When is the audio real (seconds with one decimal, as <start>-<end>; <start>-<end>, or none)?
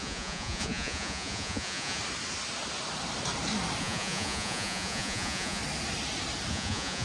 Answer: 2.0-3.8; 5.6-6.5